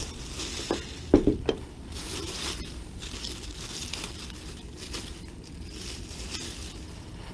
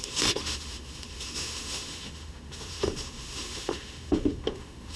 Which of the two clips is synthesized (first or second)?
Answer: second